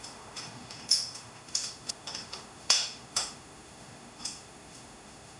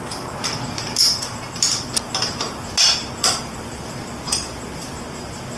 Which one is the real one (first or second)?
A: second